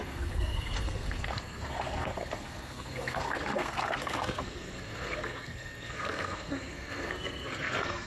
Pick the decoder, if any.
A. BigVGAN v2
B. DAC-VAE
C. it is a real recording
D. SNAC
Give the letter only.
D